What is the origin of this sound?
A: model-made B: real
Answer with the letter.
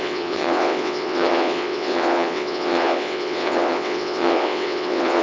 A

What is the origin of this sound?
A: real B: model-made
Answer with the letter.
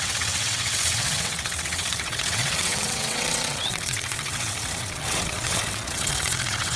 B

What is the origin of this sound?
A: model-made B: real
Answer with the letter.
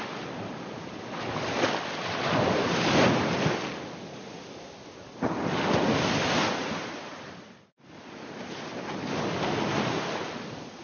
B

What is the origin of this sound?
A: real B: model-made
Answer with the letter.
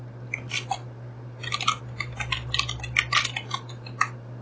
A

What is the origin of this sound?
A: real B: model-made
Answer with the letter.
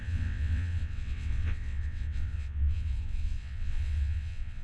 B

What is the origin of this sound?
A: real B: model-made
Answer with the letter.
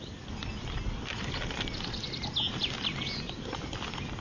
A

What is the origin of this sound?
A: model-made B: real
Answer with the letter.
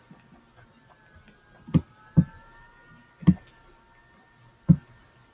B